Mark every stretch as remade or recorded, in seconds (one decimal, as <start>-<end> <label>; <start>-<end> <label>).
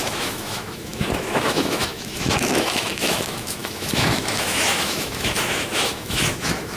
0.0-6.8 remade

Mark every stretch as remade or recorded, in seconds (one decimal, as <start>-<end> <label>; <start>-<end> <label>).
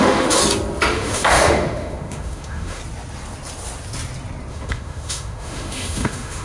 0.0-0.4 remade; 0.4-0.9 recorded; 0.9-2.8 remade; 2.8-4.5 recorded; 4.5-6.4 remade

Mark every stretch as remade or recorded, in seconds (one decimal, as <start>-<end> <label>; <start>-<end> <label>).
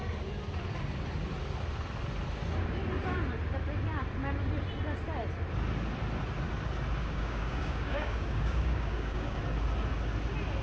0.0-7.0 recorded; 7.0-9.4 remade; 9.4-10.6 recorded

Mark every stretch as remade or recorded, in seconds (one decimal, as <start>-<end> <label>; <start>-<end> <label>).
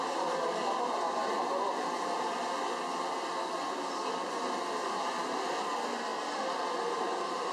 0.0-7.5 recorded